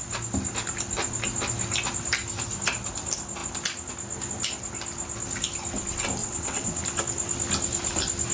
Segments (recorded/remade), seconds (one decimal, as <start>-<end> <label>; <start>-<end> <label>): 0.0-6.2 recorded; 6.2-6.8 remade; 6.8-8.3 recorded